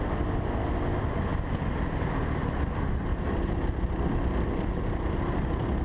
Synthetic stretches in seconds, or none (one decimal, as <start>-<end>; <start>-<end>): none